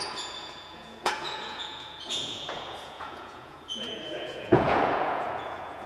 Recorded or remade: remade